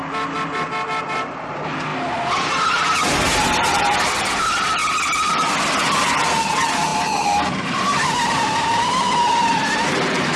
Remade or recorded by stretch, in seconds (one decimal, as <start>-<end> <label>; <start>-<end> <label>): 0.0-1.0 recorded; 1.0-4.8 remade; 4.8-5.3 recorded; 5.3-10.4 remade